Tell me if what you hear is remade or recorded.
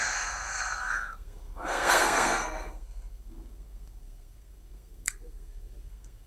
remade